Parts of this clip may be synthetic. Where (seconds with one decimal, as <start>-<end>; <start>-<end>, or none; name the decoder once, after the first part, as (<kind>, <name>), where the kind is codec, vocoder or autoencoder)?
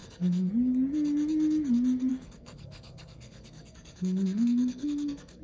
0.0-0.5 (codec, SNAC); 2.1-5.4